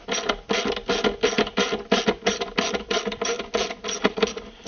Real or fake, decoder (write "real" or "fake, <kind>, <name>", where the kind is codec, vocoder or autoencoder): real